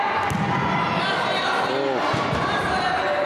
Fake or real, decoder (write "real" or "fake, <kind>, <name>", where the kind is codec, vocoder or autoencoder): real